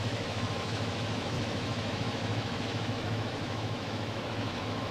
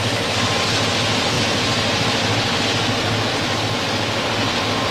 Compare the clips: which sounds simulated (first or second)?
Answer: first